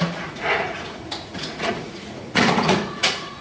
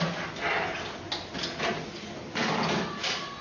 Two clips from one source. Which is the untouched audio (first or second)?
second